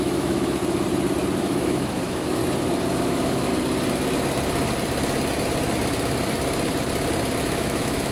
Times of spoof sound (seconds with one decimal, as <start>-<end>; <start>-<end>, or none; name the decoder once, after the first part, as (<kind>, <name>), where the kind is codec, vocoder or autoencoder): 0.0-0.6 (autoencoder, DAC-VAE); 1.4-2.4; 2.9-3.5; 7.4-8.1